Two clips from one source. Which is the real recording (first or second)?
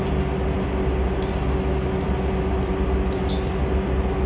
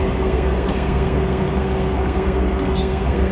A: first